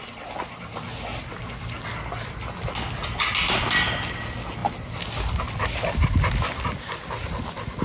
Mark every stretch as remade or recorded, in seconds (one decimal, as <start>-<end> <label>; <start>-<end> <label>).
0.0-7.8 recorded